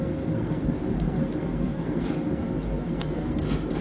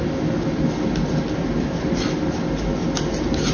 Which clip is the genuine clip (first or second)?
second